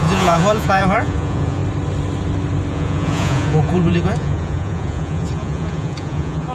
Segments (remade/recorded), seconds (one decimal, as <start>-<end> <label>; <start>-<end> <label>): 0.0-1.6 remade; 1.6-2.7 recorded; 2.7-6.5 remade